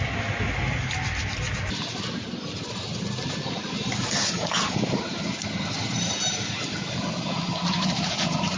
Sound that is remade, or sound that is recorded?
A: recorded